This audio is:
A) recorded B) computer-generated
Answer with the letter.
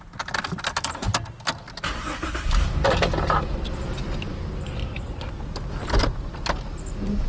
A